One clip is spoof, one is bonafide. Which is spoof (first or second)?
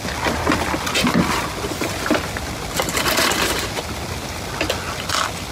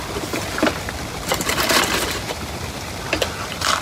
second